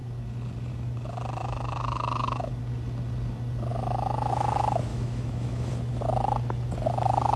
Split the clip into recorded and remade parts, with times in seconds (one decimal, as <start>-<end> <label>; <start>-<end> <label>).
0.0-1.4 recorded; 1.4-2.5 remade; 2.5-3.7 recorded; 3.7-4.3 remade; 4.3-4.9 recorded; 4.9-5.7 remade; 5.7-7.4 recorded